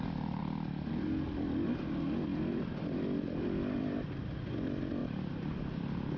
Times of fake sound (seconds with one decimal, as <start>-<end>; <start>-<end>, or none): 2.3-4.5; 5.0-6.2